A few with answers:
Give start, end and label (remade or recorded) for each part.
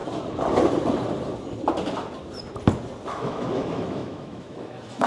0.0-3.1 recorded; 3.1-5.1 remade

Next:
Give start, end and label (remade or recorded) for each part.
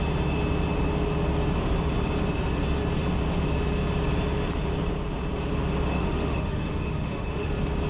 0.0-5.9 recorded; 5.9-7.5 remade; 7.5-7.9 recorded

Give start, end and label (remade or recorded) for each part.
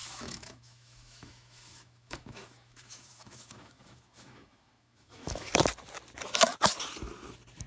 0.0-5.5 remade; 5.5-7.7 recorded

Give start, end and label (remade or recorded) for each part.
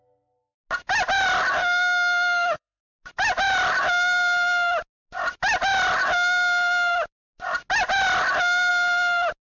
0.0-1.6 recorded; 1.6-2.8 remade; 2.8-9.6 recorded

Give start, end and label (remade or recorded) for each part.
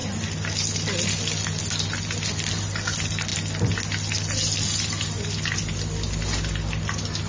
0.0-7.3 recorded